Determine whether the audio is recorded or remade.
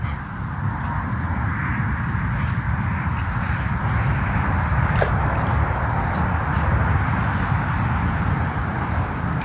remade